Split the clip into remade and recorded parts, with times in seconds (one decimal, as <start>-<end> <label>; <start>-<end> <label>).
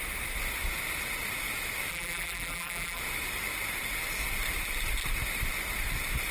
0.0-1.9 recorded; 1.9-3.0 remade; 3.0-6.3 recorded